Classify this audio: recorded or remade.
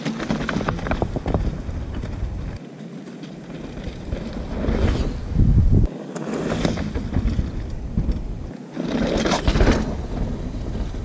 recorded